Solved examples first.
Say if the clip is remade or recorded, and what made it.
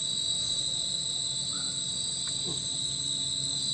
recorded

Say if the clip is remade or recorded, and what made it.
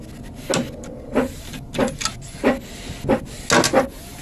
recorded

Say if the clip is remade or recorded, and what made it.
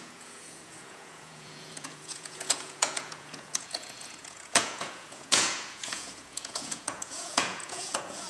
remade, vocoder, Vocos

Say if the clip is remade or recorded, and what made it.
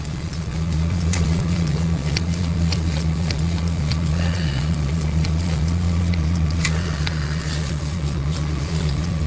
remade, vocoder, Vocos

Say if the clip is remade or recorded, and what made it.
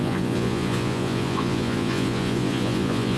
remade, vocoder, Vocos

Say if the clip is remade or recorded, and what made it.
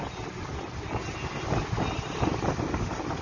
recorded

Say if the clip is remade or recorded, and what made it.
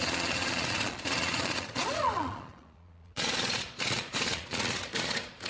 remade, vocoder, Vocos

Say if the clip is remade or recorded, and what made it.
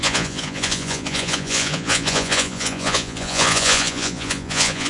remade, vocoder, Vocos